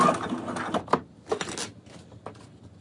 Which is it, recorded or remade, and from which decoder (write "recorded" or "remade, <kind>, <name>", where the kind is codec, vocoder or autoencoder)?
recorded